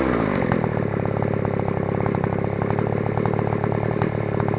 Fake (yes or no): no